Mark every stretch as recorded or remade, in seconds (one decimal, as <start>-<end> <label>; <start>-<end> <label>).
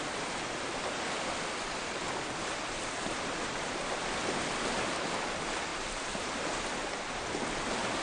0.0-8.0 recorded